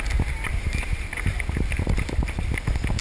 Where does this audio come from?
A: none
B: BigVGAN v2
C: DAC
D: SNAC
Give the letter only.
A